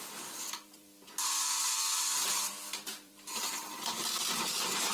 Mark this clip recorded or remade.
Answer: remade